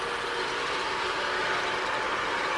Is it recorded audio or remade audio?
recorded